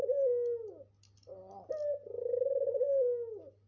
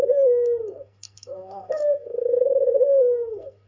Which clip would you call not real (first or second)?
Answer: second